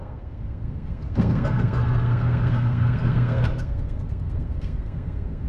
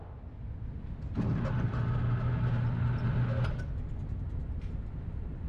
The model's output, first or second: first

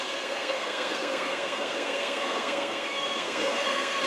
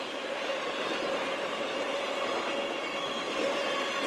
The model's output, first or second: first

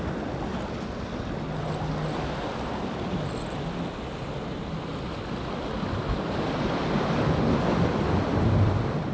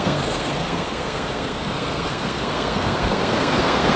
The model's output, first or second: second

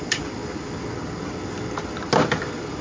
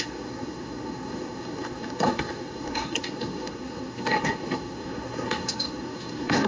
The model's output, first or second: second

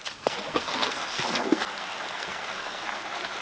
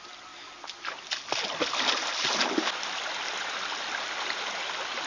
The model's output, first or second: first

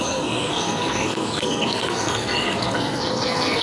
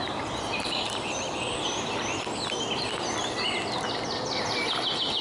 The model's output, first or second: first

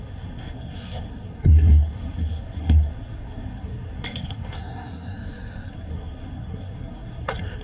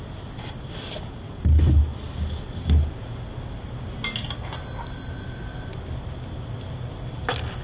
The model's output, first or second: first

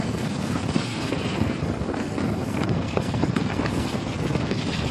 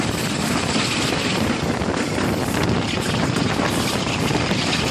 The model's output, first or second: first